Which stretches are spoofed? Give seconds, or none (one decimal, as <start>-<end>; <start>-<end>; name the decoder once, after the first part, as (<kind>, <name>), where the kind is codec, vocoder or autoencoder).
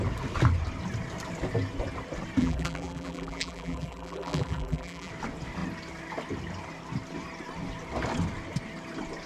2.4-5.1 (vocoder, BigVGAN v2)